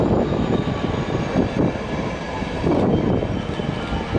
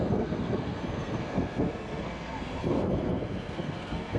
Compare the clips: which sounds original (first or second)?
first